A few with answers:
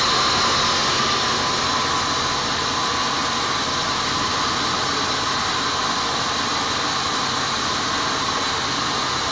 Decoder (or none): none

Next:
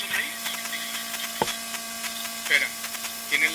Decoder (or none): none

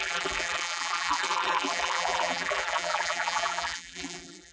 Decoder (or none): vocoder, BigVGAN v2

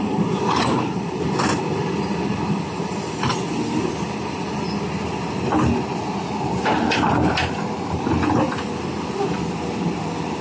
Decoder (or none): none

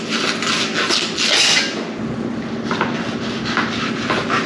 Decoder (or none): none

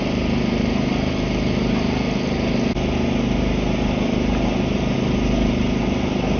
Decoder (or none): none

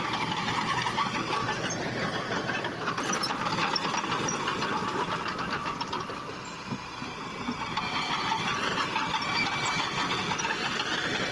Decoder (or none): none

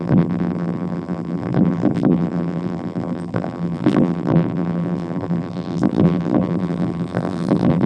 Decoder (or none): vocoder, BigVGAN v2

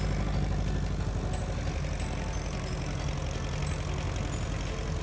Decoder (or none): none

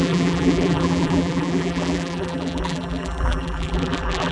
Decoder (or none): vocoder, BigVGAN v2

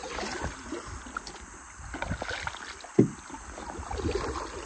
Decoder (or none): none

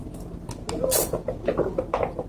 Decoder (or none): none